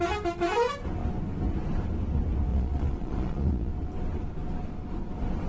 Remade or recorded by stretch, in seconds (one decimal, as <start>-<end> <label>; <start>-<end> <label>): 0.0-2.5 recorded; 2.5-3.7 remade; 3.7-5.5 recorded